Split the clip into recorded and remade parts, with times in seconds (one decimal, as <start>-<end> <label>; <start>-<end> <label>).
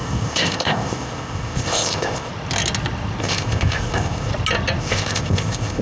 0.0-2.3 remade; 2.3-3.2 recorded; 3.2-4.3 remade; 4.3-4.8 recorded; 4.8-5.8 remade